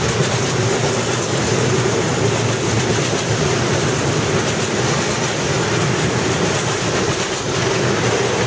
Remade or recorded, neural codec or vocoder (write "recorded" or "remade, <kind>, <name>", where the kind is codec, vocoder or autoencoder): recorded